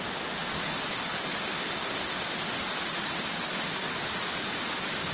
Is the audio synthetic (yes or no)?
no